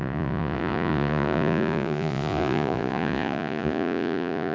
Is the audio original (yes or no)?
no